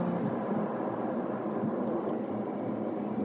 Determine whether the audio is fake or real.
real